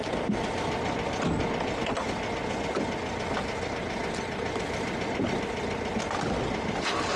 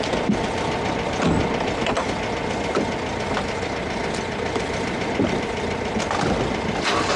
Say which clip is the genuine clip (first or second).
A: first